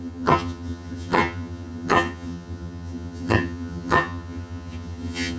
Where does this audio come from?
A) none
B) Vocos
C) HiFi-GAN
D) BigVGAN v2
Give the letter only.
C